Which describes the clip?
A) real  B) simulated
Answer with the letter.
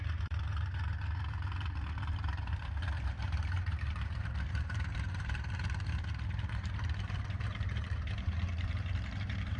B